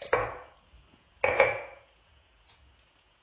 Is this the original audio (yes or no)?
no